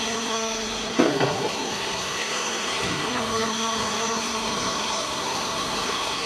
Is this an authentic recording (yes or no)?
no